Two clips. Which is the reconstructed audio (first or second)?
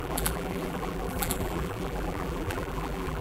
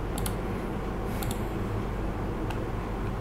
first